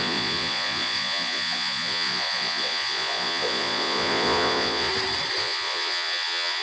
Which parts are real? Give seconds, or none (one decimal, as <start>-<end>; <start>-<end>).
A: 4.9-5.4